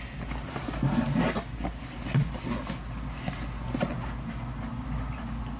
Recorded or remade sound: recorded